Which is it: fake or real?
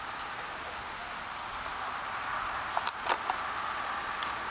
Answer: real